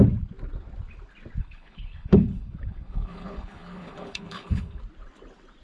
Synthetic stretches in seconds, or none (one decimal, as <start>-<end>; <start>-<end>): 1.4-4.8